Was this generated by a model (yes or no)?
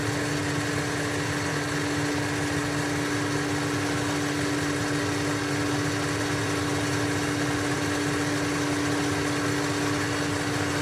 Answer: no